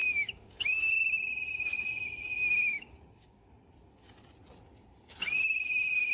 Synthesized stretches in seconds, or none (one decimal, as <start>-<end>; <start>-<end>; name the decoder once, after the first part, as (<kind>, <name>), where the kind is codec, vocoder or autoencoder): 0.0-0.9 (codec, DAC); 2.6-3.5

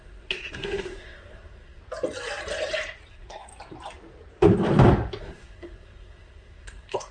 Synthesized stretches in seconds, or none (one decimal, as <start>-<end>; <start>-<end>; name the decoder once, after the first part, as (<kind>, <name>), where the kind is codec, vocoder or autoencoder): 0.0-1.8 (codec, SNAC); 3.1-3.5; 5.2-7.1

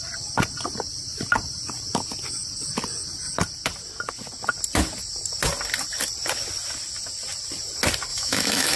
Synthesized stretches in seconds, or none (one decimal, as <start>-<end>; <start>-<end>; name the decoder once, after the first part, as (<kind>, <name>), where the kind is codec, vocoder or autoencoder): 8.1-8.8 (autoencoder, DAC-VAE)

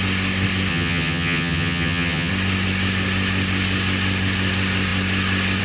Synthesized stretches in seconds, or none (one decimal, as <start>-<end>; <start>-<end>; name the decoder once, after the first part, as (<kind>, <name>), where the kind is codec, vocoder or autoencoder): 0.7-2.3 (vocoder, HiFi-GAN)

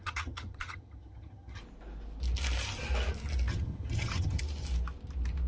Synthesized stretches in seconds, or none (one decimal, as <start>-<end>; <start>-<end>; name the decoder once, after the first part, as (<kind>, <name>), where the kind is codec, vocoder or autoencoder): 0.0-1.6 (vocoder, HiFi-GAN); 3.5-4.4

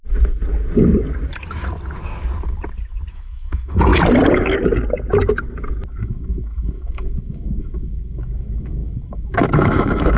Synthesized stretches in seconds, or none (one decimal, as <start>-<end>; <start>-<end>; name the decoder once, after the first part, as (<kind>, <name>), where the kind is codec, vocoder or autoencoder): 3.1-3.9 (autoencoder, DAC-VAE); 6.0-10.2